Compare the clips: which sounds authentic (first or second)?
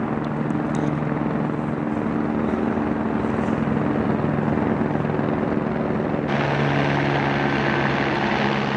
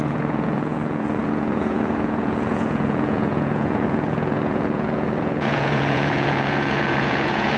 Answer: first